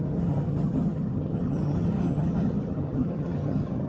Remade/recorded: remade